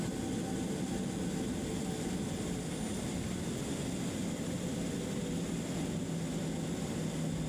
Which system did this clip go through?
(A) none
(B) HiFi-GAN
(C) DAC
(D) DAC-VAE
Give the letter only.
A